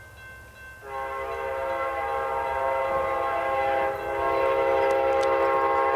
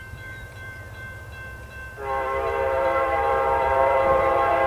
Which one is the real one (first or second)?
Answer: first